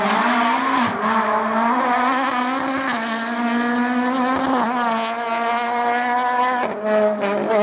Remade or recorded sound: recorded